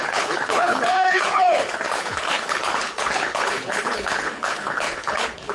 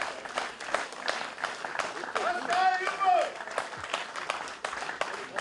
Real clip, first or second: second